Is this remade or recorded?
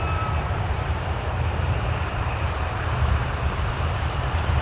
remade